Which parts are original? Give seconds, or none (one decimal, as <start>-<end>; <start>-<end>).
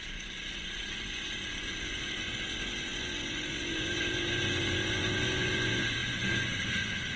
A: none